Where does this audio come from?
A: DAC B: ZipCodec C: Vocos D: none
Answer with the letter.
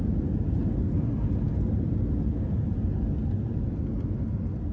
D